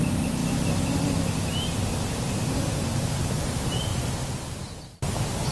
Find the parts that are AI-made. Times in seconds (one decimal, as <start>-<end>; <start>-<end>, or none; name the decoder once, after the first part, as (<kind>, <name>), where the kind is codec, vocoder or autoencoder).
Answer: 0.0-0.4 (vocoder, BigVGAN v2); 2.5-3.9; 4.8-5.5